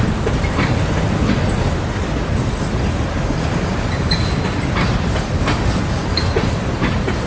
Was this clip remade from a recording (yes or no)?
no